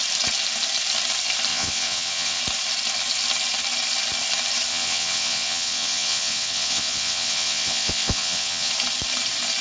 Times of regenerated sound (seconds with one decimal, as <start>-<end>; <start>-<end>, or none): 1.5-2.4; 4.7-8.7